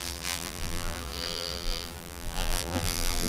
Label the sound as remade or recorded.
remade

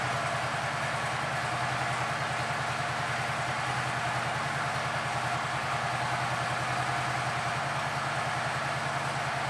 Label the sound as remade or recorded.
recorded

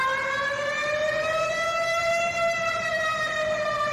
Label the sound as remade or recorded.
remade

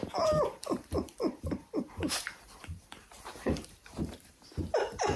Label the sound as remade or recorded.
remade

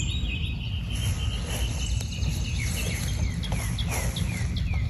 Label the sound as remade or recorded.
recorded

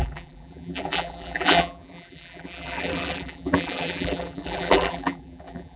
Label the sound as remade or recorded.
remade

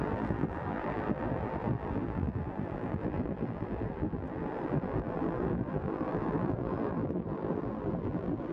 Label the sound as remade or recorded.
remade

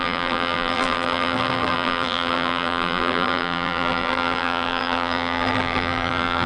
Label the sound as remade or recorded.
remade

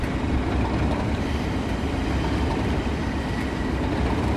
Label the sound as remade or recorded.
remade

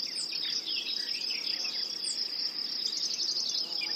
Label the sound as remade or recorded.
recorded